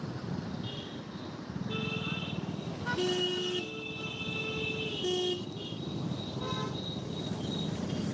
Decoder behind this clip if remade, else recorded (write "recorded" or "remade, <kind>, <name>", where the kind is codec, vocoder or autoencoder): recorded